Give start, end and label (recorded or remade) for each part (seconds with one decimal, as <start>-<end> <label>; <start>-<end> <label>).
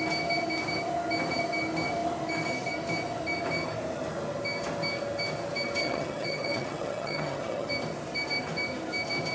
0.0-5.8 recorded; 5.8-7.7 remade; 7.7-9.3 recorded